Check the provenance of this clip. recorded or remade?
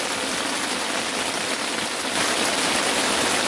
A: recorded